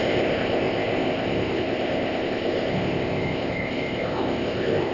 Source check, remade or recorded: remade